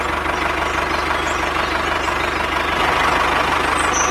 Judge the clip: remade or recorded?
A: recorded